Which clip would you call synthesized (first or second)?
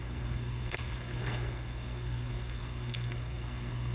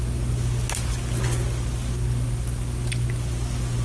first